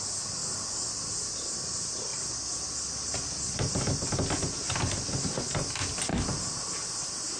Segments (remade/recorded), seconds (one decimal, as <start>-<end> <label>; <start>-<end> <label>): 0.0-7.4 recorded